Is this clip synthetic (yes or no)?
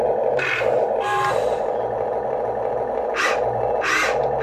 yes